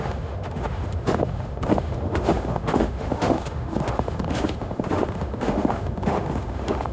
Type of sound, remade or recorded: remade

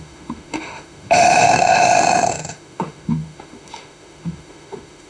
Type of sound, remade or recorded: remade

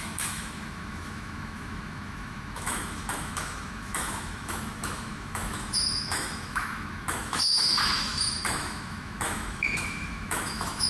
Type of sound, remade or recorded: remade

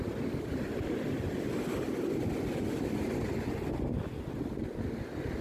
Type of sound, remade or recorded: recorded